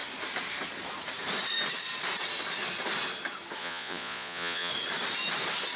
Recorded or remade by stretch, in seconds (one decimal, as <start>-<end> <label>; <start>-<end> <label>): 0.0-3.6 recorded; 3.6-4.7 remade; 4.7-5.8 recorded